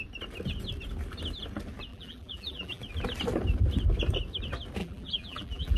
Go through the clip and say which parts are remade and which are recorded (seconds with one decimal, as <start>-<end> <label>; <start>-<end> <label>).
0.0-1.9 recorded; 1.9-2.8 remade; 2.8-4.8 recorded; 4.8-5.8 remade